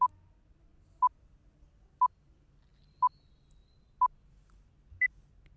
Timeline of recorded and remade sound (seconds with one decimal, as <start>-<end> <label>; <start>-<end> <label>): 0.0-5.6 recorded